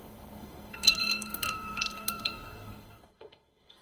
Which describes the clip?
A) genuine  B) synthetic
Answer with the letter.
B